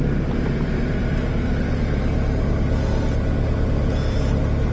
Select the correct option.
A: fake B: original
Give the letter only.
B